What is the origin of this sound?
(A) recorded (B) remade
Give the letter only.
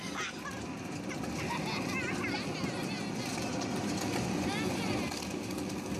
A